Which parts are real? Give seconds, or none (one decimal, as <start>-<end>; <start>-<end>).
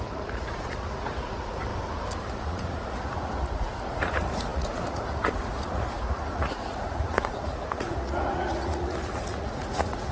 1.7-2.2